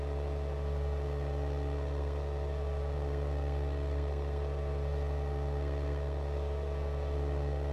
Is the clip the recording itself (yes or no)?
no